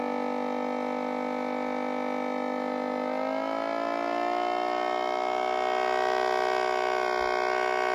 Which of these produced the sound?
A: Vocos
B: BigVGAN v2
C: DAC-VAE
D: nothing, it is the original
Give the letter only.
D